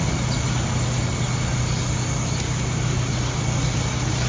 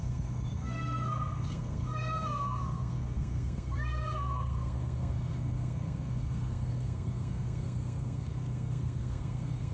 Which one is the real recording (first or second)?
first